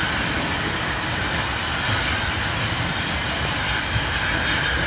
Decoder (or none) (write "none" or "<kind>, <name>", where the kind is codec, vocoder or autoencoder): none